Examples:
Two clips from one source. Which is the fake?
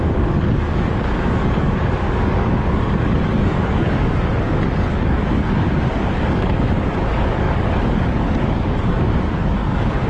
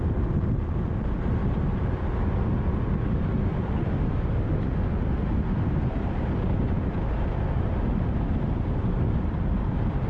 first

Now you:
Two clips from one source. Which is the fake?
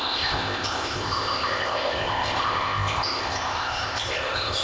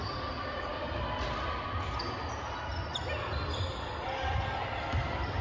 first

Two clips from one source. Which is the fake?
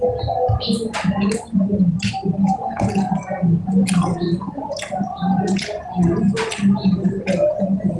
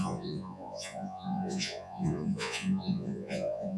second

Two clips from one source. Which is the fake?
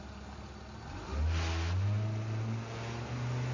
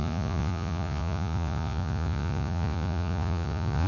second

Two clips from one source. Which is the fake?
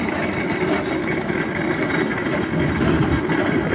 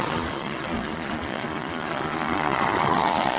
second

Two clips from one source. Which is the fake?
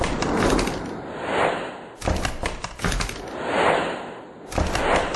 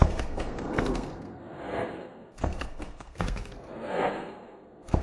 second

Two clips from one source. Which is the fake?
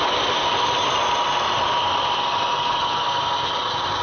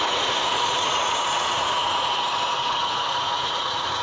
second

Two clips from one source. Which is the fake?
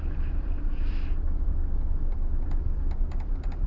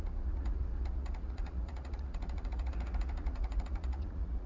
second